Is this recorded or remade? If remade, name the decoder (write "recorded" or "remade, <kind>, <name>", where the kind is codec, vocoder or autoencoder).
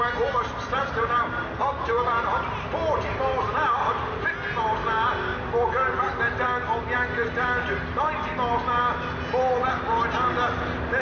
recorded